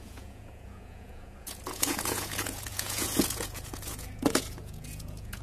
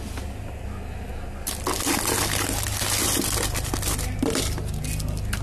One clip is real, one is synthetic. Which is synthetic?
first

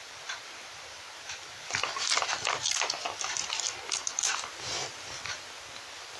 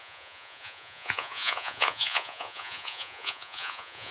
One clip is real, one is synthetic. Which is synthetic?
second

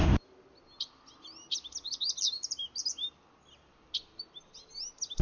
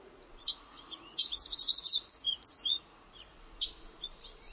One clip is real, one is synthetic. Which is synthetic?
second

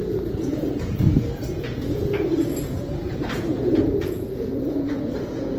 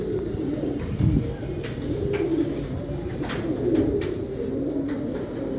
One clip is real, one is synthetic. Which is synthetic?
first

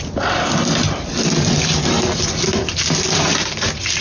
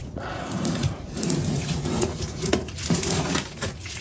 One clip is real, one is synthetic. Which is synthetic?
second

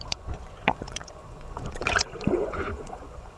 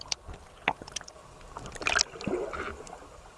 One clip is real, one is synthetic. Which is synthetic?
first